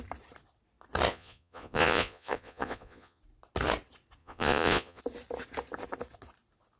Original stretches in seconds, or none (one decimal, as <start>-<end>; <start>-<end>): 0.0-1.1; 3.2-4.2; 5.0-6.8